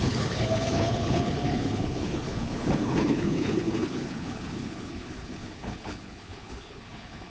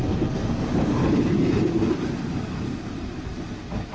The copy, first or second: first